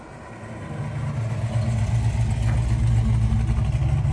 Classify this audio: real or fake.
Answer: real